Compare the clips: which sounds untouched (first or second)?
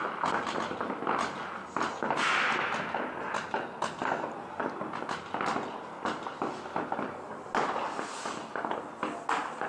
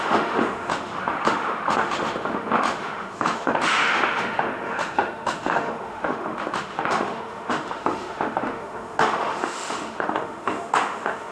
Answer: first